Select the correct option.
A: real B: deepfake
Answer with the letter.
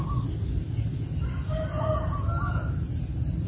A